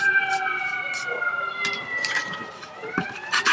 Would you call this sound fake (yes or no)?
yes